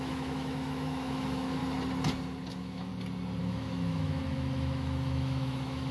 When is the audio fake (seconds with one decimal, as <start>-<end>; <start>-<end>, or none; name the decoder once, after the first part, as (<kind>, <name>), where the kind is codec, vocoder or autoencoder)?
0.0-1.6 (autoencoder, DAC-VAE); 2.5-2.9; 3.4-5.9